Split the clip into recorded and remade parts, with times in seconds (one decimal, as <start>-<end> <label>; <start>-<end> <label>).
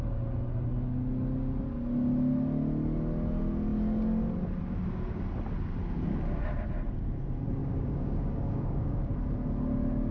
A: 0.0-7.6 recorded; 7.6-9.1 remade; 9.1-10.1 recorded